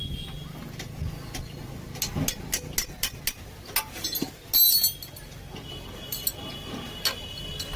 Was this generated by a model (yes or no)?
no